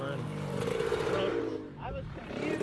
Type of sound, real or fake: fake